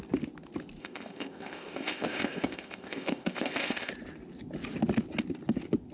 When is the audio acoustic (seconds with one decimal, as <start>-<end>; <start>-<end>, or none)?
0.0-0.8; 3.9-5.9